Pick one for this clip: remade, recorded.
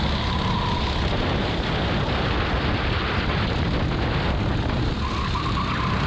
recorded